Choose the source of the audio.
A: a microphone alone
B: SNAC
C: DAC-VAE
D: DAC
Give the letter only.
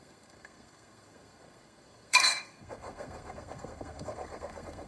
B